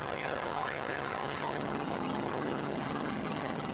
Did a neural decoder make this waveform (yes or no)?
yes